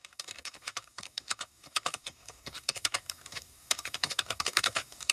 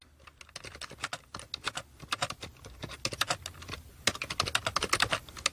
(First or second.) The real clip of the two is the second